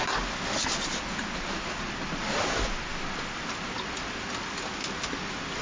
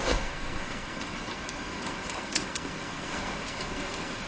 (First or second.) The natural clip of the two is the first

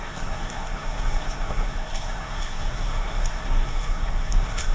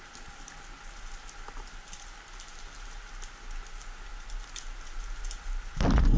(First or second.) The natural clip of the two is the second